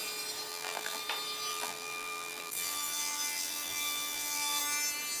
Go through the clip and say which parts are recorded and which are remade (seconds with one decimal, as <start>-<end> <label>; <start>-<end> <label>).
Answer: 0.0-0.5 recorded; 0.5-1.0 remade; 1.0-1.5 recorded; 1.5-4.6 remade; 4.6-5.2 recorded